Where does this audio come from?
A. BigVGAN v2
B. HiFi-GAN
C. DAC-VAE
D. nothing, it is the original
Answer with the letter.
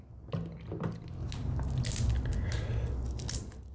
D